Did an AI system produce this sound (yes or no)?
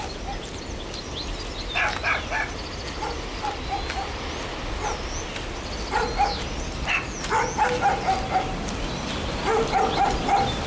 no